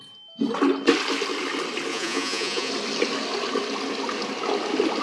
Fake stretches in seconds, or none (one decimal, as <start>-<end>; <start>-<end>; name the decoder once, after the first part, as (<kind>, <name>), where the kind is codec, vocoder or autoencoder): 1.9-2.7 (vocoder, Vocos)